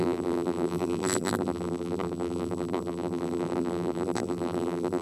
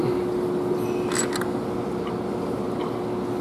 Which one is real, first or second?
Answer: second